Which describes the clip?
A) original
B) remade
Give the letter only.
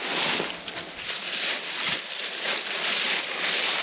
A